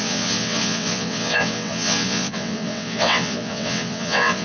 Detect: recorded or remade remade